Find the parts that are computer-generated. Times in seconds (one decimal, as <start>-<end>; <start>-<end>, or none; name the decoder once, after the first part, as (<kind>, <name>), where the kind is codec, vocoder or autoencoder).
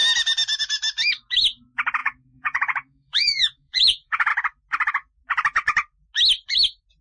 2.0-4.3 (vocoder, Vocos)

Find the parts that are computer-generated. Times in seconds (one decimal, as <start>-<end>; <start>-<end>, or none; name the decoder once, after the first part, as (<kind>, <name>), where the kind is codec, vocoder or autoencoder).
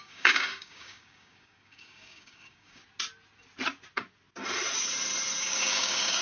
0.0-2.8 (codec, DAC); 5.4-6.2